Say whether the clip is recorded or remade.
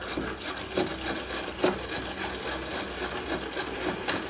recorded